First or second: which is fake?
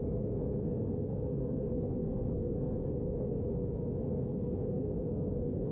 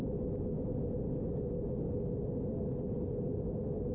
first